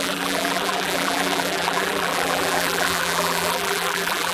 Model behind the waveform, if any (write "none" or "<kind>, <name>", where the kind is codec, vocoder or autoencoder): vocoder, BigVGAN v2